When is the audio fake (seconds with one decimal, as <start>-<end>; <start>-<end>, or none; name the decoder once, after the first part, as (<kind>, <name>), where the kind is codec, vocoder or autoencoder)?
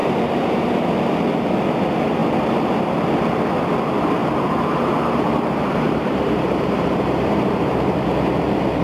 0.0-0.9 (vocoder, BigVGAN v2); 4.2-8.0